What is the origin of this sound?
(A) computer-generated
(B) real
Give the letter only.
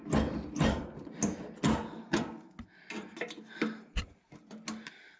B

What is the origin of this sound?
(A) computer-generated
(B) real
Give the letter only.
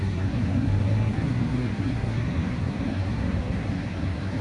A